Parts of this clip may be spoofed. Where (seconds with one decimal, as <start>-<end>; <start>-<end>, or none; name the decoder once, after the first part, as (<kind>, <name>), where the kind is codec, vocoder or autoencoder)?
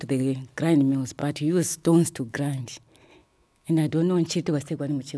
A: 1.2-2.6 (autoencoder, DAC-VAE); 3.2-3.9